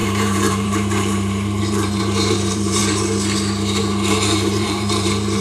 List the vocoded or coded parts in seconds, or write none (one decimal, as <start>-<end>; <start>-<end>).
0.0-2.8; 3.8-5.4